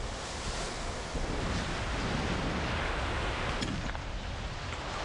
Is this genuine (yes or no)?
yes